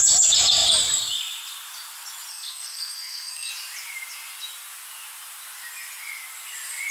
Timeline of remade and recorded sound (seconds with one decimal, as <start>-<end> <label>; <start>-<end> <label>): 0.0-2.3 recorded; 2.3-3.5 remade; 3.5-6.9 recorded